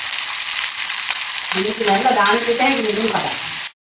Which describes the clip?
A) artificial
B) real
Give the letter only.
B